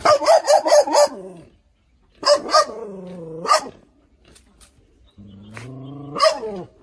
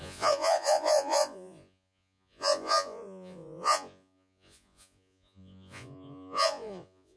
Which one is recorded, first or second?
first